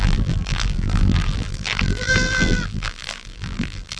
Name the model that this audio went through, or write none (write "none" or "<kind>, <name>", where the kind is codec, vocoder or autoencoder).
vocoder, BigVGAN v2